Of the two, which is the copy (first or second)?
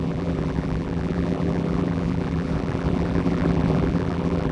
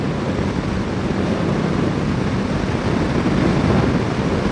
first